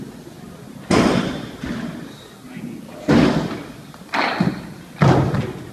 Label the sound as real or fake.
real